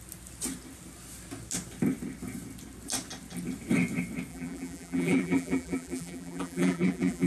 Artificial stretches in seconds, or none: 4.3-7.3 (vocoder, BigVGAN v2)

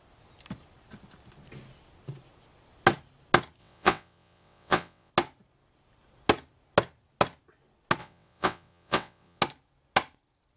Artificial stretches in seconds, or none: 3.6-5.1 (vocoder, WaveNeXt); 8.0-9.4

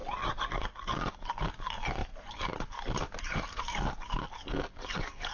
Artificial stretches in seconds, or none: 2.0-4.2 (vocoder, BigVGAN v2)

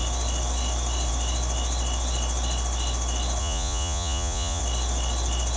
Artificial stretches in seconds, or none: 3.4-4.6 (vocoder, Vocos)

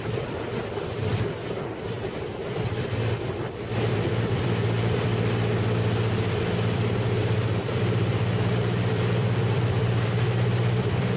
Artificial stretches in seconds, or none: 0.0-1.1 (vocoder, BigVGAN v2); 2.1-5.1; 6.3-11.2

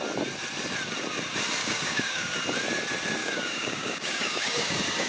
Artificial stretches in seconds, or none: 1.6-2.3 (codec, DAC); 3.2-5.1

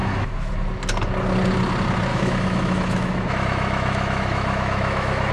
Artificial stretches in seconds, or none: 0.0-0.5 (autoencoder, DAC-VAE); 2.1-5.3